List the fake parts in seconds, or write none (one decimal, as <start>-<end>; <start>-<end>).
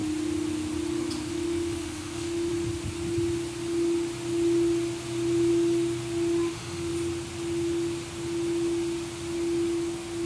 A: 1.3-2.5; 6.5-6.9